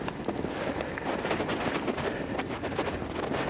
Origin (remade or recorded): recorded